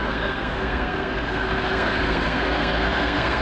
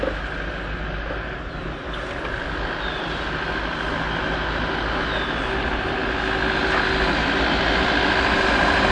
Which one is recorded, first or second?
second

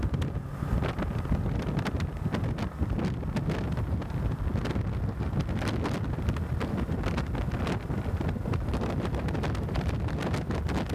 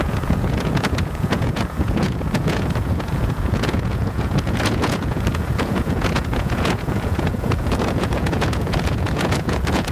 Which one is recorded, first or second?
first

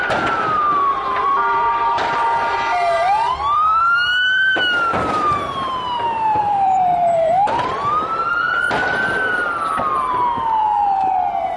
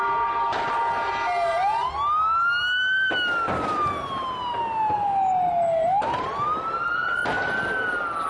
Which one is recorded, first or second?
second